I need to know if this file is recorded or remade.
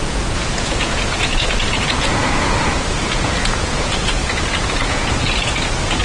remade